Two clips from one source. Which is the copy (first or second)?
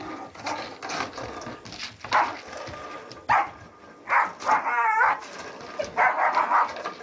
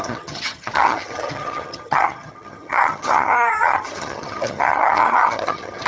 second